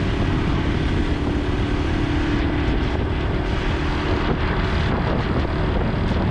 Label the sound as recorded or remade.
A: recorded